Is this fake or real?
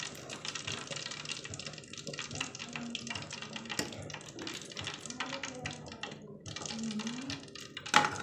real